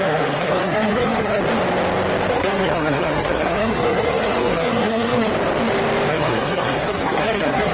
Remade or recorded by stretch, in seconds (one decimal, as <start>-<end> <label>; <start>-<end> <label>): 0.0-1.4 remade; 1.4-2.3 recorded; 2.3-5.3 remade; 5.3-6.1 recorded; 6.1-7.7 remade